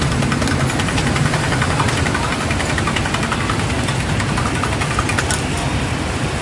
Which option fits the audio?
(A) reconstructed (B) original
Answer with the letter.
B